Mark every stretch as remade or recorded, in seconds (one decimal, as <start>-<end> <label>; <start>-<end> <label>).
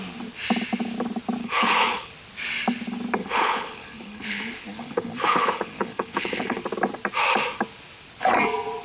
0.0-1.4 recorded; 1.4-2.1 remade; 2.1-3.2 recorded; 3.2-6.6 remade; 6.6-8.8 recorded